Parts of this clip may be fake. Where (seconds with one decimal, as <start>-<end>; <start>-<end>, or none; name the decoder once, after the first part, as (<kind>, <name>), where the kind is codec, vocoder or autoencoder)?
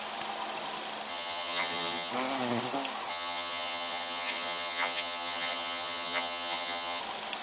1.1-2.1 (vocoder, HiFi-GAN); 3.1-7.0